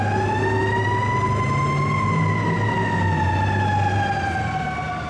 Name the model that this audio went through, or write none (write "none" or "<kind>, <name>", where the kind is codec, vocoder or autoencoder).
none